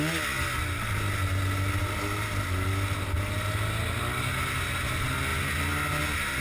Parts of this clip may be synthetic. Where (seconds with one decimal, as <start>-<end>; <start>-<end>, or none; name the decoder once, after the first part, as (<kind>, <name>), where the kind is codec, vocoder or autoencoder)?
none